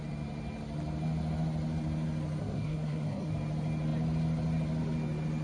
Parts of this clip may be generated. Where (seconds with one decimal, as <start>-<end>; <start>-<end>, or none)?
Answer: 2.4-3.3

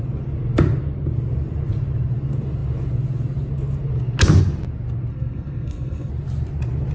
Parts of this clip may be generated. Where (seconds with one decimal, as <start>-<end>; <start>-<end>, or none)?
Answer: 5.1-6.1